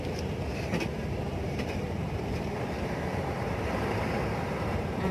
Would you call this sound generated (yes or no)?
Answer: yes